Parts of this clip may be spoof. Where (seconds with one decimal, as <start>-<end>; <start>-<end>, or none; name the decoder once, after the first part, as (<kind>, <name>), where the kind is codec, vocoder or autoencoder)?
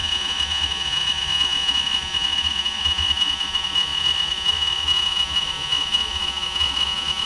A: 0.0-7.3 (vocoder, Vocos)